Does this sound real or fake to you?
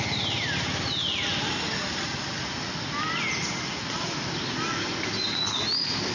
real